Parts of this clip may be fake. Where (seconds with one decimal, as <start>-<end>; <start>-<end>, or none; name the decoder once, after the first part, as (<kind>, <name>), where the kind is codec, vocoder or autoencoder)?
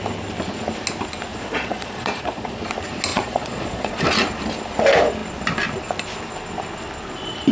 1.3-2.6 (vocoder, Vocos); 3.1-4.0